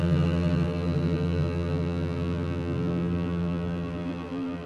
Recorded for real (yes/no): no